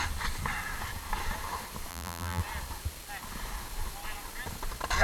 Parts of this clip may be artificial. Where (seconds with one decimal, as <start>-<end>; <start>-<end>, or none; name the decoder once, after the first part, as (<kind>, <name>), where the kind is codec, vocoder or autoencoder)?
1.9-2.4 (vocoder, BigVGAN v2)

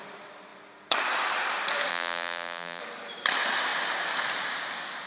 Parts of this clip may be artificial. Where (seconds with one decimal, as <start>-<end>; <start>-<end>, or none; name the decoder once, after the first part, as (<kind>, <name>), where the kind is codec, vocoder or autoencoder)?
1.9-2.8 (vocoder, BigVGAN v2)

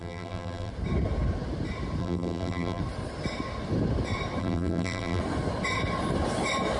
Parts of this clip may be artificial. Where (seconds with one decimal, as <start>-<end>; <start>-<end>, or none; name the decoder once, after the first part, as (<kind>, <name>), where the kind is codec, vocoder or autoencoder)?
0.0-0.7 (vocoder, BigVGAN v2); 2.0-2.8; 4.4-5.2

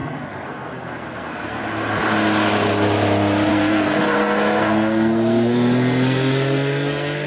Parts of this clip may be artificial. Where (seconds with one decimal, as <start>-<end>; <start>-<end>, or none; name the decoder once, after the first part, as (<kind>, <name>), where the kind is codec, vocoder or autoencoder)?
0.0-1.6 (codec, SNAC); 3.5-7.3